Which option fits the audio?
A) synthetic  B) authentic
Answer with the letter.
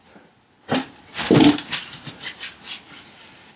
B